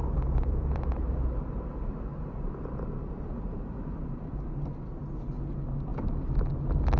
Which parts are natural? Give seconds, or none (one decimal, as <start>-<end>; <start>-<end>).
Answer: 4.2-7.0